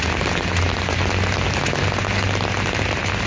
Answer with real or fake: real